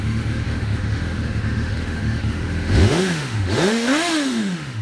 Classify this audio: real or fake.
fake